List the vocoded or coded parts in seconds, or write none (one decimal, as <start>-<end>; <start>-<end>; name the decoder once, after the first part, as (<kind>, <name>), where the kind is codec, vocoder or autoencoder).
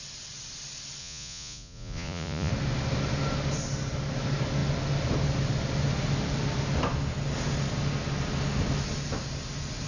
1.0-2.5 (vocoder, Vocos)